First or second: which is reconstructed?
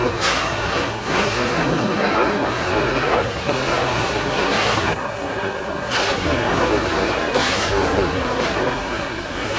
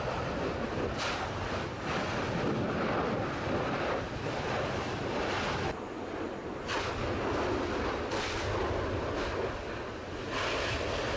first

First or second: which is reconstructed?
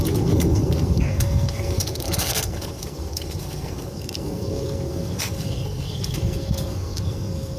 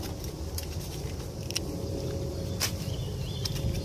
first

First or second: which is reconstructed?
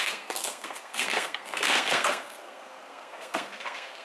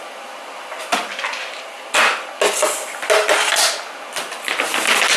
first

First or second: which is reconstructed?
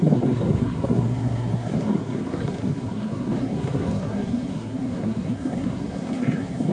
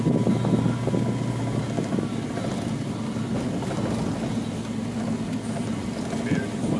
first